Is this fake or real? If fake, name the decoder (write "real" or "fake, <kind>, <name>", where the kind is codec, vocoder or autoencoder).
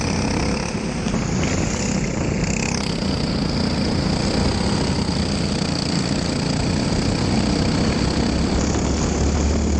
real